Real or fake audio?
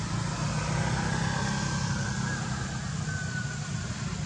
real